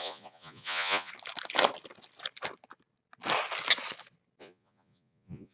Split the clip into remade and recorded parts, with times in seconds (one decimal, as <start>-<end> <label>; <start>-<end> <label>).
0.0-1.1 remade; 1.1-4.4 recorded; 4.4-5.5 remade